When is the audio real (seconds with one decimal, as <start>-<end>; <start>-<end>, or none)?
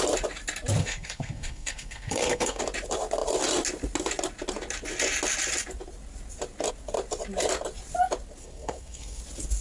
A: 0.0-0.8; 2.6-8.4; 9.2-9.6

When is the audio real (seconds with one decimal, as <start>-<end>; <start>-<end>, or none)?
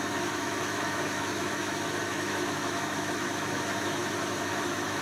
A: 4.0-4.5